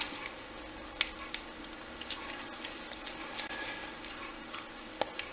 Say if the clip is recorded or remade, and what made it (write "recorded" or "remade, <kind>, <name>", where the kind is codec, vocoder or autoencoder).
recorded